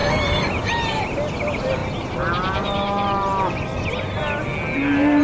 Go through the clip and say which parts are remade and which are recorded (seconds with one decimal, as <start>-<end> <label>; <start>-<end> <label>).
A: 0.0-5.2 recorded

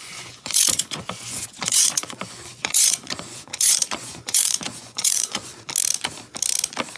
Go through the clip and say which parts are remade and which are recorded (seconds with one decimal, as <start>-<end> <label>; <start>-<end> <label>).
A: 0.0-5.5 remade; 5.5-7.0 recorded

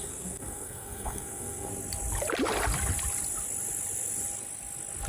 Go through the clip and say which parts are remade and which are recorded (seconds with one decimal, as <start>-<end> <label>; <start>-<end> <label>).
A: 0.0-1.7 remade; 1.7-5.1 recorded

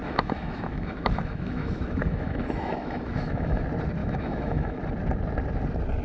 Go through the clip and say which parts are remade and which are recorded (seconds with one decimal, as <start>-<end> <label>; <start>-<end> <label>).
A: 0.0-3.6 remade; 3.6-4.0 recorded; 4.0-4.8 remade; 4.8-6.0 recorded

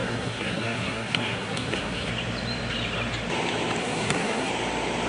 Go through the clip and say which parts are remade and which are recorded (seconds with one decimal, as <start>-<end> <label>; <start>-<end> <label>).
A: 0.0-2.1 remade; 2.1-3.8 recorded; 3.8-4.5 remade; 4.5-5.1 recorded

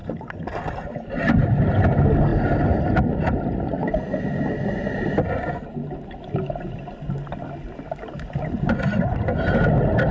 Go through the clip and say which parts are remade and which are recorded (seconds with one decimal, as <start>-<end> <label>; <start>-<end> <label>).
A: 0.0-10.1 recorded

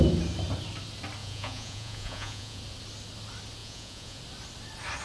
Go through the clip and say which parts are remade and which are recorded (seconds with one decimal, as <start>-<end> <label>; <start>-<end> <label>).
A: 0.0-1.2 recorded; 1.2-2.6 remade; 2.6-3.6 recorded; 3.6-4.2 remade; 4.2-5.0 recorded